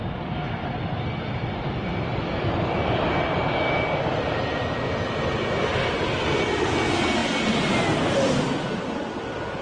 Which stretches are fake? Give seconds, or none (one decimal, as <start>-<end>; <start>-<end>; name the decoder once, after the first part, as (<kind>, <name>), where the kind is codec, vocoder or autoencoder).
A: none